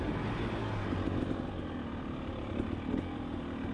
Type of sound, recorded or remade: recorded